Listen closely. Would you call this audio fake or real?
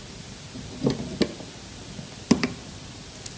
real